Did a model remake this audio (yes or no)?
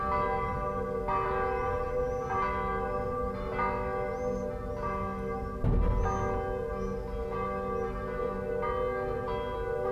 no